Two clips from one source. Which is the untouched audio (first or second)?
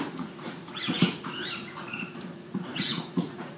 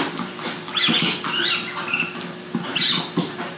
second